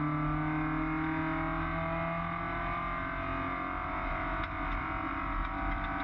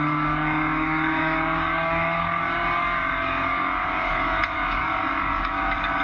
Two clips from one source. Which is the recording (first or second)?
first